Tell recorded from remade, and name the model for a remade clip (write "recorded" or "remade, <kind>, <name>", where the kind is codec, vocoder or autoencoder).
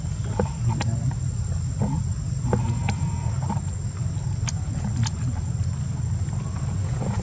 recorded